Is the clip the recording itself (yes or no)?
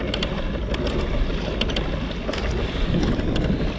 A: yes